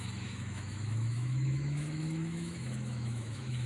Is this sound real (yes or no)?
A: no